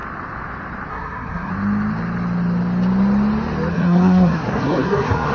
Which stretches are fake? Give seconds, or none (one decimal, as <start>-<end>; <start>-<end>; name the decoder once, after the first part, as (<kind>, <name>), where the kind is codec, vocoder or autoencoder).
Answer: 0.9-1.5 (codec, SNAC); 3.7-5.3

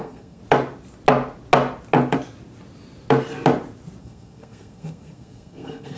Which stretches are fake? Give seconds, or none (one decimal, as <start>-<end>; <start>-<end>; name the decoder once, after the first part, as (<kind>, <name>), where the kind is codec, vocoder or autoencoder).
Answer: 0.0-0.4 (codec, SNAC); 4.0-6.0

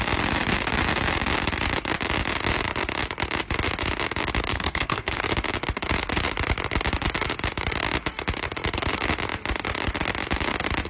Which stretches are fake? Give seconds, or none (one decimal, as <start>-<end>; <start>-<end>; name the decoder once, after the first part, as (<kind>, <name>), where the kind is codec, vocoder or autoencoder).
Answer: 4.5-5.2 (codec, SNAC)

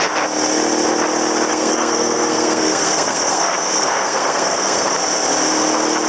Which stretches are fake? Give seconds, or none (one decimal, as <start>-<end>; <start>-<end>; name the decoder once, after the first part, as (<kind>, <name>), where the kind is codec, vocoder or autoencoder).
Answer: 1.5-4.9 (codec, SNAC)

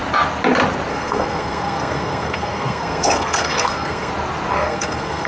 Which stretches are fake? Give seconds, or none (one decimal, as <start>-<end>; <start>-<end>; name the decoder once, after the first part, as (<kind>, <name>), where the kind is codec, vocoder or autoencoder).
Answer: 0.9-4.1 (codec, SNAC); 4.5-5.3

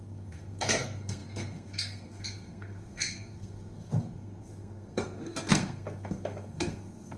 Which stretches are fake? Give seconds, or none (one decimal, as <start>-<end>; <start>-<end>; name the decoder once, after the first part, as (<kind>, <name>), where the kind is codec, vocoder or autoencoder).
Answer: 0.0-7.2 (codec, SNAC)

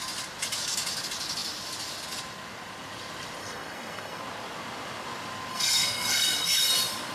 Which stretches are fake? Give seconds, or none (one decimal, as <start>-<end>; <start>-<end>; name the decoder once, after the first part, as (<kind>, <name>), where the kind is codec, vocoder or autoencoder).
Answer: 3.4-4.2 (codec, SNAC); 5.5-6.6

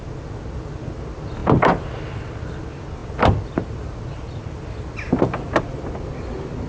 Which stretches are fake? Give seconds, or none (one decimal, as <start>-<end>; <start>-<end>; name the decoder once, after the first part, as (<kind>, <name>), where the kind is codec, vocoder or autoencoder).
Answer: none